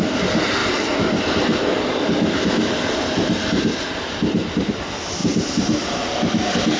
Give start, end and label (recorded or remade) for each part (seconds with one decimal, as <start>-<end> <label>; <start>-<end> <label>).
0.0-6.8 recorded